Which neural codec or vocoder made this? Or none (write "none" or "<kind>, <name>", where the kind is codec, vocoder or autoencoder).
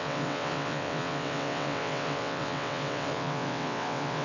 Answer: vocoder, WaveNeXt